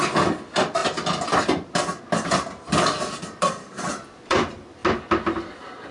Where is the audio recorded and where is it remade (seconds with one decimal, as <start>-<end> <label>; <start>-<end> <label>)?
0.0-0.8 remade; 0.8-2.0 recorded; 2.0-4.8 remade; 4.8-5.9 recorded